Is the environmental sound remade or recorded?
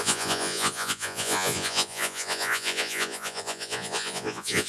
remade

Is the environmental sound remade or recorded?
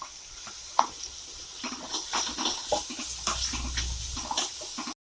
recorded